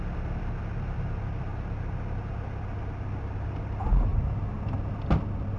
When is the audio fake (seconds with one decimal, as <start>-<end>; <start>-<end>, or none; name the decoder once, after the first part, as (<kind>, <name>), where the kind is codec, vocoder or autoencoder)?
none